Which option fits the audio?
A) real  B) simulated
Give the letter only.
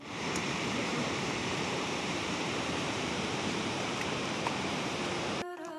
B